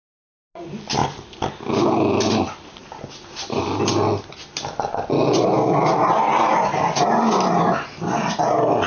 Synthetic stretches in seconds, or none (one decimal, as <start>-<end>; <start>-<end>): none